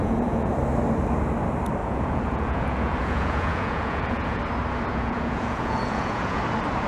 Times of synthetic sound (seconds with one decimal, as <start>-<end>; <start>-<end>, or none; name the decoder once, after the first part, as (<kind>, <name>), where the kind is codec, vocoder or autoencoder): 0.0-0.5 (vocoder, Vocos); 1.8-4.4; 4.9-6.4